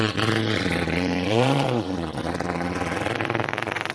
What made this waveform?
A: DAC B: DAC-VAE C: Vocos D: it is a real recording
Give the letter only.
C